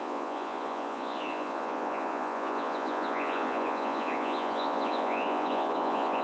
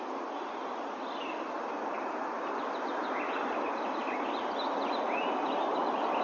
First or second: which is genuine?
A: second